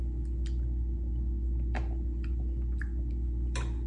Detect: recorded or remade recorded